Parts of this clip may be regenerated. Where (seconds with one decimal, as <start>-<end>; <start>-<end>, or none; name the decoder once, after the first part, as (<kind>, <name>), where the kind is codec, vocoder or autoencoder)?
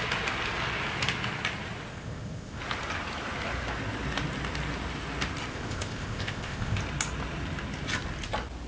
1.9-2.6 (codec, ZipCodec); 5.5-6.8